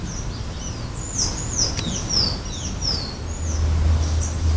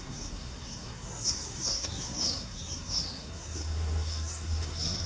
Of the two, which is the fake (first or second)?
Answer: second